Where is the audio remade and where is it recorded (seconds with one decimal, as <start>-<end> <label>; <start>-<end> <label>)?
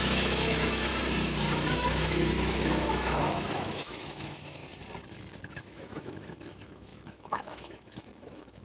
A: 0.0-0.9 remade; 0.9-1.7 recorded; 1.7-4.6 remade; 4.6-5.5 recorded; 5.5-8.6 remade